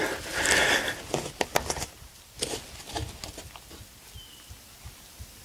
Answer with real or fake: real